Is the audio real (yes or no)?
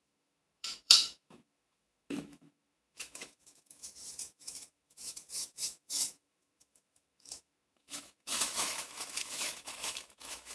no